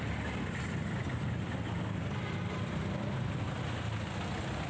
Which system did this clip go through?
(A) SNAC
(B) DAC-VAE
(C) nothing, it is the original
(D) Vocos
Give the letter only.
C